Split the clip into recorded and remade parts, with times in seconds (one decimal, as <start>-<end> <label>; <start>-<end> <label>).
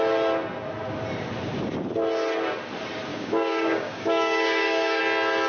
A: 0.0-3.1 recorded; 3.1-5.0 remade; 5.0-5.5 recorded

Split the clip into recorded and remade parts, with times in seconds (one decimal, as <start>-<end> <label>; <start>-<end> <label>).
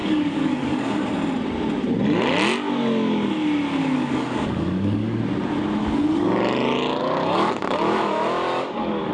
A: 0.0-1.1 remade; 1.1-3.8 recorded; 3.8-5.2 remade; 5.2-7.0 recorded; 7.0-9.1 remade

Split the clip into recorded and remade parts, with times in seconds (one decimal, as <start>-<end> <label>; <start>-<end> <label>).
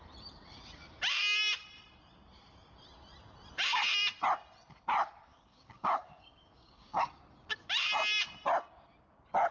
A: 0.0-5.3 recorded; 5.3-7.2 remade; 7.2-9.5 recorded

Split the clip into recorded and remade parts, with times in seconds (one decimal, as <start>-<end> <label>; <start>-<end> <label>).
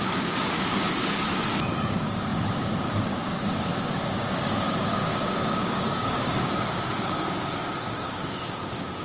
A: 0.0-9.0 remade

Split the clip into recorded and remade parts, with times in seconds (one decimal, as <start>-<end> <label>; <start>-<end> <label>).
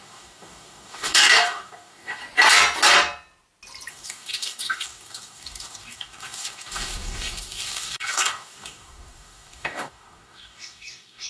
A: 0.0-2.2 remade; 2.2-3.9 recorded; 3.9-11.3 remade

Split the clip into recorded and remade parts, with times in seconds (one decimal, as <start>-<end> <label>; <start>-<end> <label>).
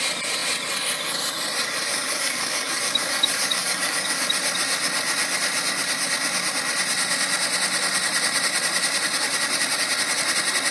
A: 0.0-1.9 recorded; 1.9-4.3 remade; 4.3-10.7 recorded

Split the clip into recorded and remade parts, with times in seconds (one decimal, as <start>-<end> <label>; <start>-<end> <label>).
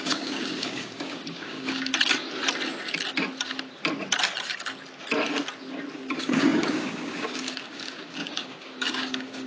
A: 0.0-1.9 remade; 1.9-6.1 recorded; 6.1-9.5 remade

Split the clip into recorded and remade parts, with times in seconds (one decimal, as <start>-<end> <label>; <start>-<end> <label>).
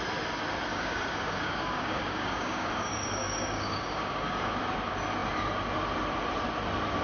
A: 0.0-0.7 recorded; 0.7-4.6 remade; 4.6-7.0 recorded